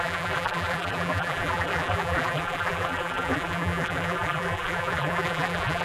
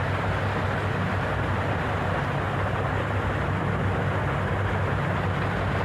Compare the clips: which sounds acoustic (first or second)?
second